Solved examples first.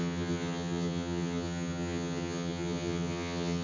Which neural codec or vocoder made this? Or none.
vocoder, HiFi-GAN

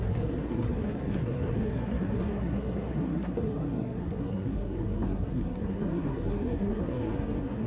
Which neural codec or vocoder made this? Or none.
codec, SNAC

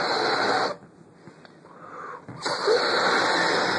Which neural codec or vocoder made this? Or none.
none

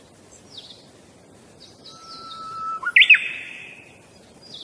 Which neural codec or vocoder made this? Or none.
none